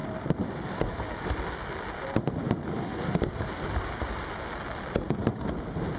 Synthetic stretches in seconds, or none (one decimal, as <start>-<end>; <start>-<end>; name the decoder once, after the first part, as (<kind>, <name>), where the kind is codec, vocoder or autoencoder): none